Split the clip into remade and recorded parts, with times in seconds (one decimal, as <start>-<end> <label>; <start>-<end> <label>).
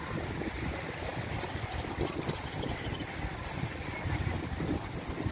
0.0-5.3 recorded